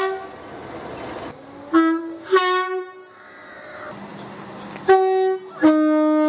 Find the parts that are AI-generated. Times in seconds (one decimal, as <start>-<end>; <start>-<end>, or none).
2.0-2.8